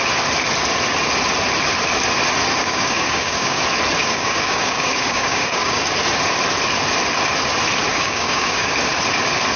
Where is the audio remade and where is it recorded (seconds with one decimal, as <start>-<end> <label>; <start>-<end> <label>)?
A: 0.0-2.6 recorded; 2.6-3.6 remade; 3.6-4.0 recorded; 4.0-5.8 remade; 5.8-7.9 recorded; 7.9-8.7 remade; 8.7-9.6 recorded